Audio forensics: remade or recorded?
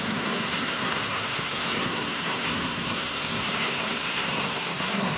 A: remade